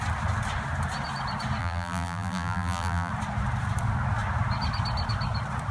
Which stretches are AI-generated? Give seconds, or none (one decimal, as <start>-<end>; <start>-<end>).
1.6-3.1